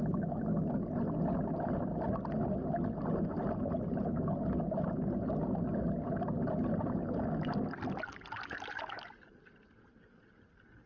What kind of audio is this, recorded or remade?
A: recorded